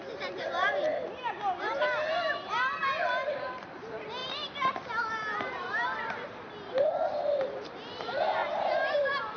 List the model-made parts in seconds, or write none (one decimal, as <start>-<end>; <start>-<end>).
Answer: 0.0-0.8; 1.6-2.8; 3.6-9.4